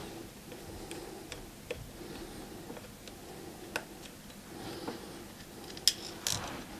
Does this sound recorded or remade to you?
recorded